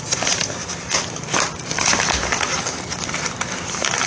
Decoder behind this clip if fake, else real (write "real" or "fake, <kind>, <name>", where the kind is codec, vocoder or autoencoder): real